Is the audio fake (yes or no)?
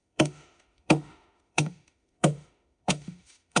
yes